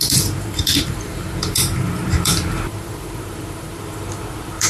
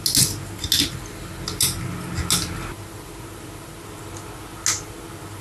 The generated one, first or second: first